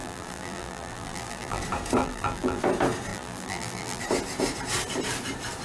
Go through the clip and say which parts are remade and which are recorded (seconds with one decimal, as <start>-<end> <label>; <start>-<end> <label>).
0.0-1.6 remade; 1.6-2.0 recorded; 2.0-2.6 remade; 2.6-3.1 recorded; 3.1-4.0 remade; 4.0-5.6 recorded